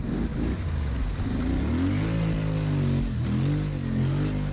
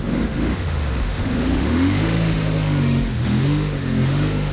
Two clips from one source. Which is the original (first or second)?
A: first